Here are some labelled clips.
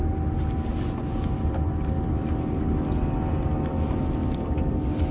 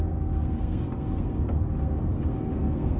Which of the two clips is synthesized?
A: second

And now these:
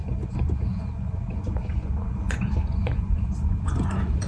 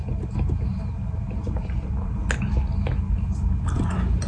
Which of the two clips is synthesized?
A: first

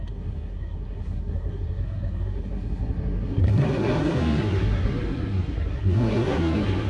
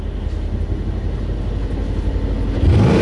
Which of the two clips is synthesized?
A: first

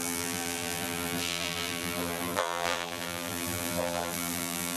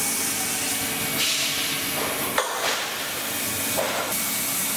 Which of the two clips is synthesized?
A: first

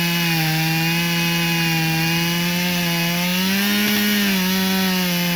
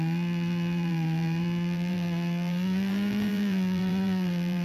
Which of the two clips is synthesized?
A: second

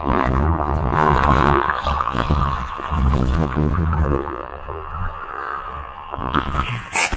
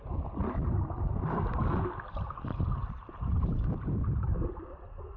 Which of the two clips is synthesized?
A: first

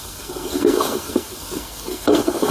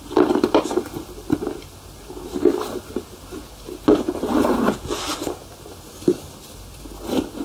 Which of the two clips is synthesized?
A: first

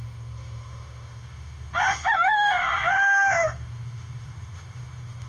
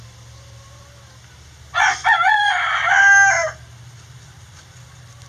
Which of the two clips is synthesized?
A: first